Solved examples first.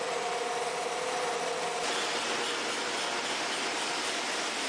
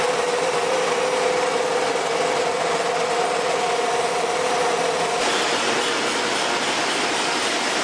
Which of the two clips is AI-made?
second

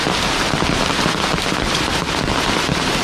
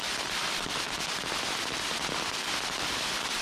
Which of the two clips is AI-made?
second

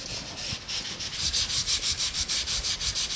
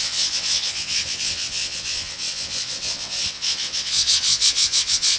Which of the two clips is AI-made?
second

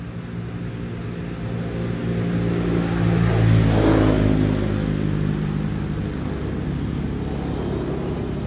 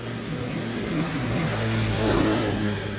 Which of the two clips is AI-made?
second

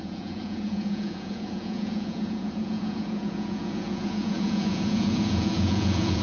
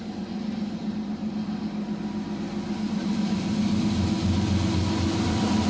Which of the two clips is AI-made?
first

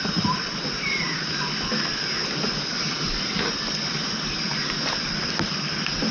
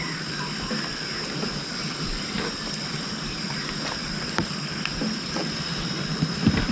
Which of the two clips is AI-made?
second